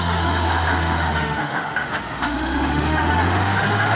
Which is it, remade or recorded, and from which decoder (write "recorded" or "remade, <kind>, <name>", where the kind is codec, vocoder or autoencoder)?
remade, autoencoder, DAC-VAE